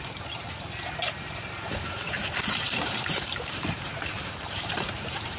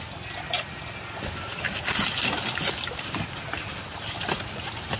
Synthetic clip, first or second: first